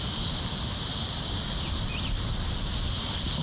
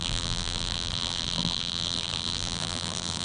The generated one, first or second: second